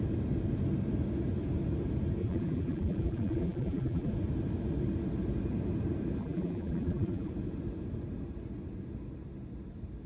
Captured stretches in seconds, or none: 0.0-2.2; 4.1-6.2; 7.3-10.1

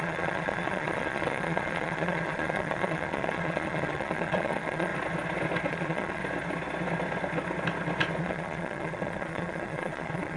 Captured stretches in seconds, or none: 4.9-5.7; 6.2-8.2

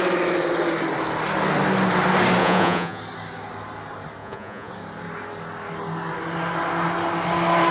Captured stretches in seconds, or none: 0.0-2.4; 3.0-4.2; 4.7-7.7